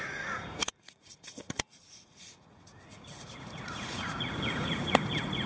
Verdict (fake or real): fake